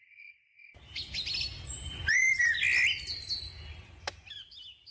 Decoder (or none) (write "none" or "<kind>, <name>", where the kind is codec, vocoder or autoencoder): none